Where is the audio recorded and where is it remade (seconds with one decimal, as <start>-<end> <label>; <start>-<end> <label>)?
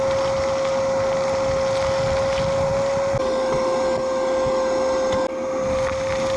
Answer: 0.0-6.4 recorded